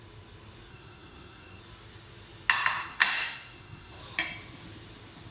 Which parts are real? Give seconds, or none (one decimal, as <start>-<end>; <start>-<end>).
0.0-0.7; 1.6-2.9; 4.0-5.3

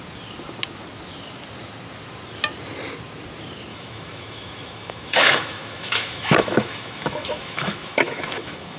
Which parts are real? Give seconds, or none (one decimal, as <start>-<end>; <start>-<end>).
0.0-3.7

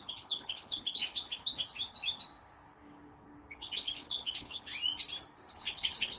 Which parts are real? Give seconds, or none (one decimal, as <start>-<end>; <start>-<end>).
1.0-3.5; 4.7-5.5

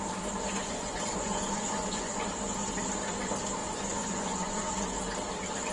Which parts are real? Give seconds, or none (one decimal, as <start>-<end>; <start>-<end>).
0.0-0.6; 2.2-3.6; 4.7-5.7

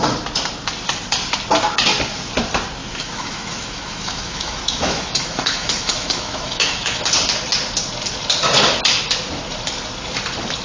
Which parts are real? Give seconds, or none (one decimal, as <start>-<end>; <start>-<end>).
0.0-2.8; 7.0-10.6